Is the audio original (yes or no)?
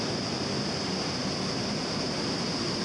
yes